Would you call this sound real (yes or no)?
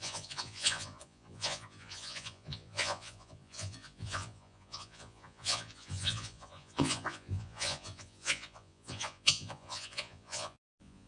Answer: no